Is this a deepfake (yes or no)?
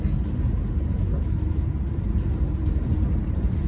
no